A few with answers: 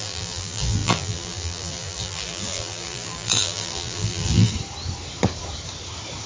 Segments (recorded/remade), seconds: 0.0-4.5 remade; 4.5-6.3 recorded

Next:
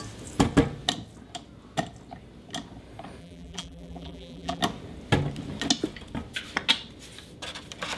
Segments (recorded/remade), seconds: 0.0-3.2 recorded; 3.2-4.6 remade; 4.6-8.0 recorded

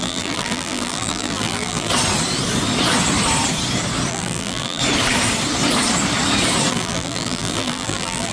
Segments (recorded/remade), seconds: 0.0-1.9 remade; 1.9-4.1 recorded; 4.1-4.8 remade; 4.8-6.7 recorded; 6.7-8.3 remade

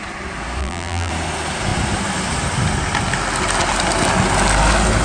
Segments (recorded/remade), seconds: 0.0-0.6 recorded; 0.6-1.1 remade; 1.1-5.0 recorded

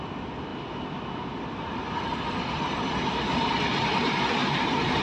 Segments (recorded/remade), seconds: 0.0-0.5 recorded; 0.5-3.5 remade; 3.5-4.4 recorded; 4.4-5.0 remade